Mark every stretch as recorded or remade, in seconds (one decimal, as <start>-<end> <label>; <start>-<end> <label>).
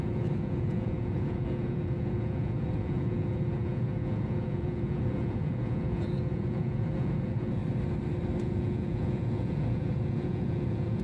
0.0-7.6 remade; 7.6-8.4 recorded; 8.4-11.0 remade